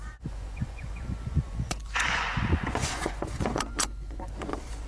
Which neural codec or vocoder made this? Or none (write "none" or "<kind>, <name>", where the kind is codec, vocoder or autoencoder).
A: vocoder, Vocos